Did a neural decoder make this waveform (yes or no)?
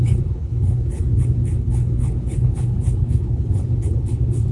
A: yes